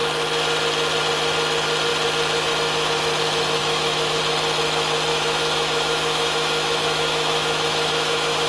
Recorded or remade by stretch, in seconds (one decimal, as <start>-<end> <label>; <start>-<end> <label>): 0.0-3.6 recorded; 3.6-4.2 remade; 4.2-5.1 recorded; 5.1-8.5 remade